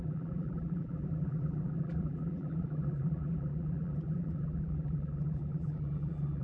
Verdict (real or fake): fake